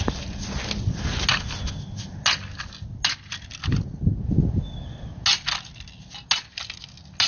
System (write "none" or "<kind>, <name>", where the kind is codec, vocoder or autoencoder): none